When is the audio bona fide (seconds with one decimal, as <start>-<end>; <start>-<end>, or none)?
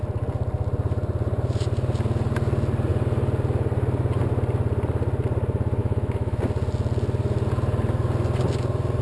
0.0-5.8; 6.4-9.0